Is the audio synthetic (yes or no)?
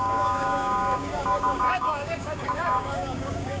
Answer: yes